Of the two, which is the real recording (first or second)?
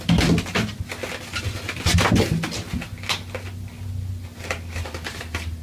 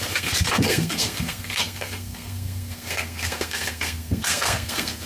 first